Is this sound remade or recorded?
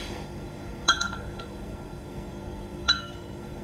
remade